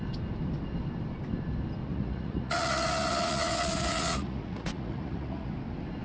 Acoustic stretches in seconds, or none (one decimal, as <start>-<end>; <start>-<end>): 0.0-1.9; 5.5-6.0